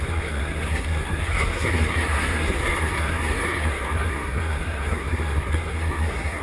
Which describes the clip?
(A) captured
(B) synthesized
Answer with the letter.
B